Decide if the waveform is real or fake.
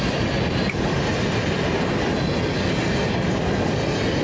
real